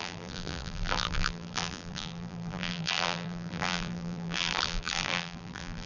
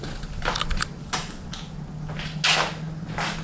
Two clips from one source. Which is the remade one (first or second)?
first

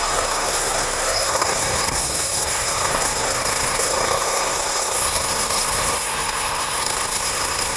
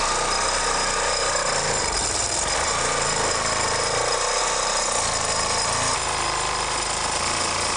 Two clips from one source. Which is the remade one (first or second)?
first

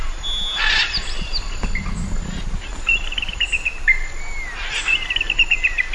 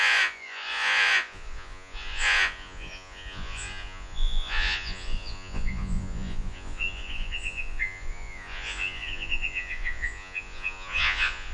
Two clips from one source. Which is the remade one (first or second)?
second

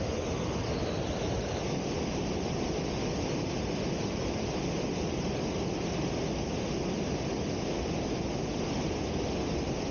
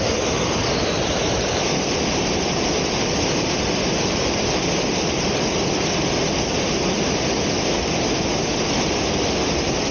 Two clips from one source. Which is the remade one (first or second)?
second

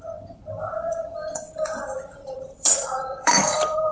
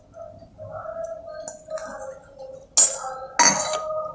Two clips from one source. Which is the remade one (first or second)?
first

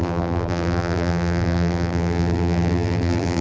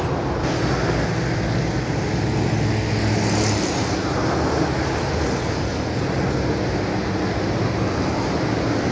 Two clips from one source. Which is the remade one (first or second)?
first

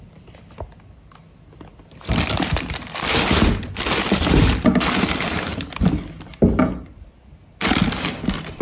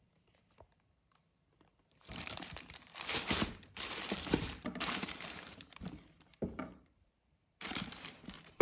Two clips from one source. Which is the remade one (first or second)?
second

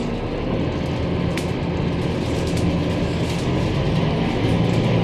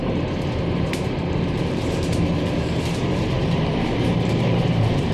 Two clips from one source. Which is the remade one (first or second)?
second